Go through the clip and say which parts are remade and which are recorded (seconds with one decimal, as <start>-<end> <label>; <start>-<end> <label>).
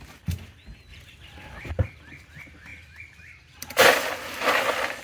0.0-0.9 recorded; 0.9-1.7 remade; 1.7-5.0 recorded